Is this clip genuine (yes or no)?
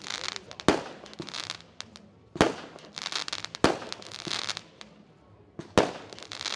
yes